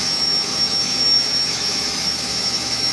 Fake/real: fake